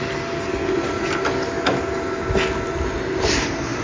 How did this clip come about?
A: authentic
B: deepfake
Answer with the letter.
A